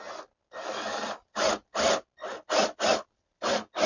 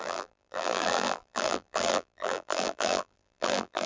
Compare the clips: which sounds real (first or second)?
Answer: first